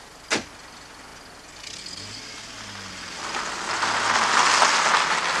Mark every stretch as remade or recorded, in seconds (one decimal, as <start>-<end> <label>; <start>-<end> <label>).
0.0-5.4 recorded